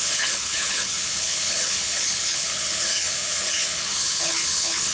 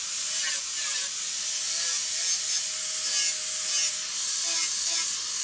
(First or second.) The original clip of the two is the second